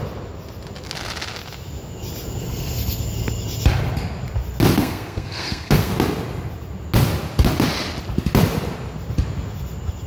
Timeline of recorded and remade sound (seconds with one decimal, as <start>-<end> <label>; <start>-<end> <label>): 0.0-2.4 recorded; 2.4-3.0 remade; 3.0-4.8 recorded; 4.8-5.9 remade; 5.9-10.1 recorded

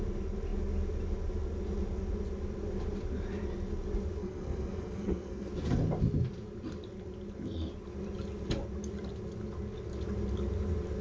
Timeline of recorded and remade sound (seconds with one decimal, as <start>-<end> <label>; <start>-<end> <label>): 0.0-4.2 recorded; 4.2-5.5 remade; 5.5-11.0 recorded